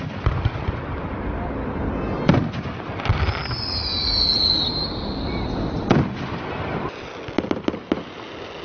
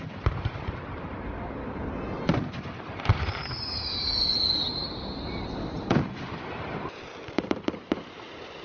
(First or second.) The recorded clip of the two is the first